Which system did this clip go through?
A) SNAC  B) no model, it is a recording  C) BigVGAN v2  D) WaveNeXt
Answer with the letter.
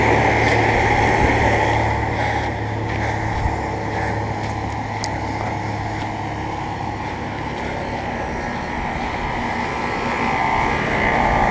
B